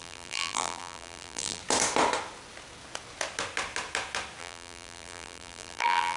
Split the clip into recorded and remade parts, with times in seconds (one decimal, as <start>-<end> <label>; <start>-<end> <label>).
0.0-1.6 remade; 1.6-4.4 recorded; 4.4-6.2 remade